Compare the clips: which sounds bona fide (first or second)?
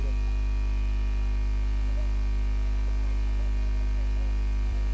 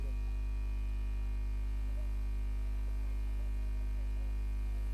second